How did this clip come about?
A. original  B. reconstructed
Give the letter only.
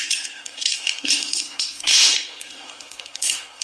B